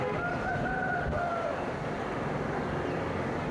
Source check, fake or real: real